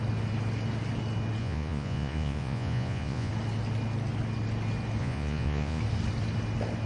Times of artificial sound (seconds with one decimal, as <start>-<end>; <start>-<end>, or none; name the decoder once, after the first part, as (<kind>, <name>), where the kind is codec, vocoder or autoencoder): 1.4-3.3 (vocoder, Vocos); 5.0-5.8